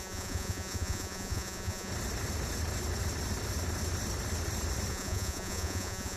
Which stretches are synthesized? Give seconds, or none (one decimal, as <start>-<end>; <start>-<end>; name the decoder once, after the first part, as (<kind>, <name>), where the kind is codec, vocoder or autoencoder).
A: 0.0-1.9 (vocoder, Vocos); 4.9-6.2

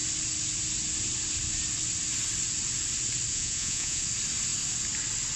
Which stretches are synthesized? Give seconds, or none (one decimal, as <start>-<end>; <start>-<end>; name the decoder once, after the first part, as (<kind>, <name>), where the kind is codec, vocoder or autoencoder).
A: 3.3-4.0 (vocoder, Vocos)

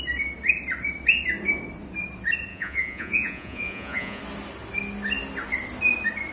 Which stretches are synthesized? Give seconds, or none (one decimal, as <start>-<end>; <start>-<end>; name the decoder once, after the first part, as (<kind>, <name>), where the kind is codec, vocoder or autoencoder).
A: 2.5-4.2 (vocoder, Vocos)

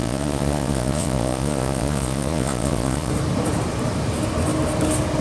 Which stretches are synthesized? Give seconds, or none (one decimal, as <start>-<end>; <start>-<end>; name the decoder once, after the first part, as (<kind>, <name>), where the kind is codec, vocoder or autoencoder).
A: 0.0-3.1 (vocoder, Vocos)